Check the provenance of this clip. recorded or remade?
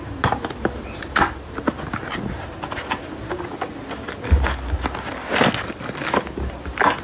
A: recorded